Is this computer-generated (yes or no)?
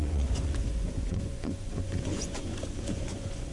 yes